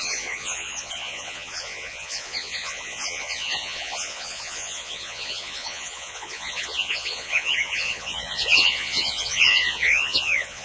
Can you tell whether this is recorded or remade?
remade